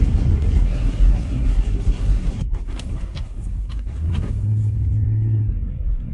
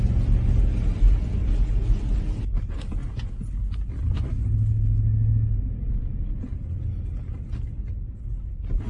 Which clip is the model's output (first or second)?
first